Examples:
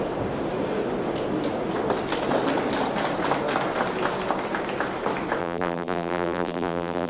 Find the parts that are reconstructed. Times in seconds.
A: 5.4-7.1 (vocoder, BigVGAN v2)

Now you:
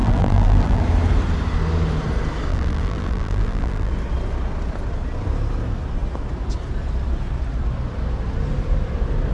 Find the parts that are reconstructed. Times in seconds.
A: 0.0-0.8 (vocoder, BigVGAN v2); 2.5-3.9

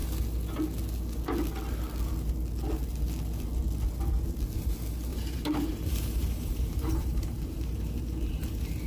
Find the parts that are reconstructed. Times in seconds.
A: 5.1-8.9 (vocoder, BigVGAN v2)

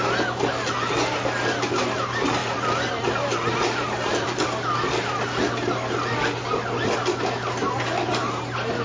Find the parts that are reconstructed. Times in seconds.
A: 2.4-4.9 (vocoder, BigVGAN v2)